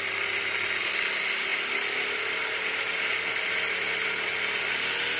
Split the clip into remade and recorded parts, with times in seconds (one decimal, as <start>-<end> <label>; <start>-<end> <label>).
0.0-5.2 recorded